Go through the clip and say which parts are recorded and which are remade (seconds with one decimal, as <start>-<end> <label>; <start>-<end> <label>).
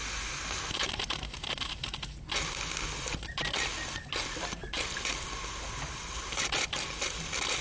0.0-7.6 recorded